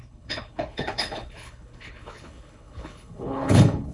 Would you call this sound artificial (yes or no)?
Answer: yes